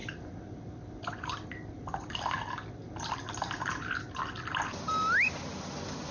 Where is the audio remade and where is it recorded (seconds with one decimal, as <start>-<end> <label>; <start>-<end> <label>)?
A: 0.0-6.1 recorded